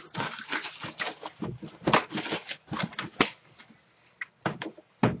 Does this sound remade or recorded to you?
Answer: recorded